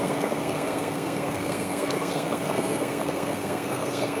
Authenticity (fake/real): fake